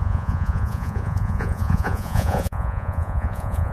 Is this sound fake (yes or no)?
yes